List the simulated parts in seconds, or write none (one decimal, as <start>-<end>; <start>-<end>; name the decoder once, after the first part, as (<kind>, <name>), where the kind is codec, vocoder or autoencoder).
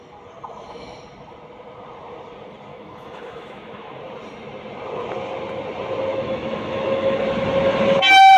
2.7-4.0 (autoencoder, DAC-VAE); 6.1-7.2